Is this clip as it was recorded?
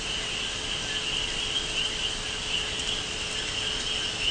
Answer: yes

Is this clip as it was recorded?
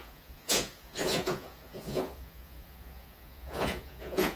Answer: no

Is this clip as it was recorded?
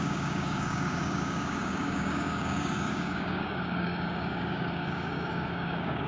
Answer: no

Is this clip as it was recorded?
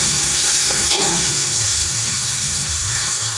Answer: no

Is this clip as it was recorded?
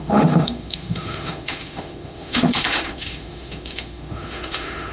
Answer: no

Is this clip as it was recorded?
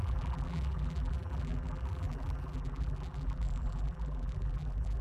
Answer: no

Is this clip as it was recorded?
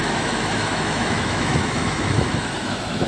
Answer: no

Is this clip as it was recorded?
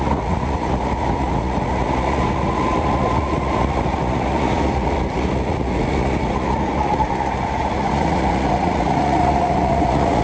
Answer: no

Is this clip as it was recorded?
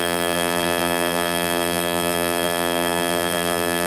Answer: no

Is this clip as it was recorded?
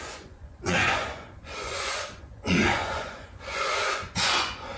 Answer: no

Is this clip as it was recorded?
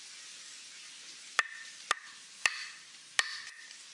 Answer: yes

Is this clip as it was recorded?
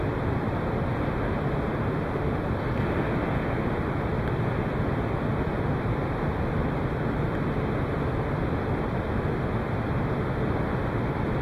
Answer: yes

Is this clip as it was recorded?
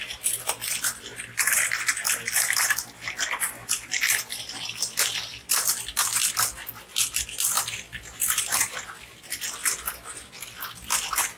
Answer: yes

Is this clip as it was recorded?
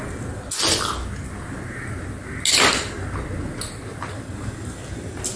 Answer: yes